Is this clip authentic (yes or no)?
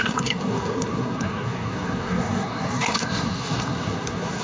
no